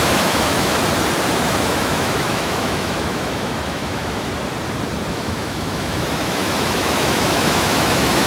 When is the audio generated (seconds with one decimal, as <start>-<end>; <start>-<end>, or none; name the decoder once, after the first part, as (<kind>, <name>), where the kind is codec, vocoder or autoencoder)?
0.0-0.8 (autoencoder, DAC-VAE); 1.4-4.3; 5.1-8.3